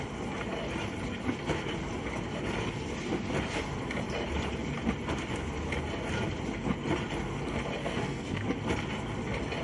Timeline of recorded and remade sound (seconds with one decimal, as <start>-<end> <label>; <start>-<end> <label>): 0.0-7.8 recorded; 7.8-8.4 remade; 8.4-9.6 recorded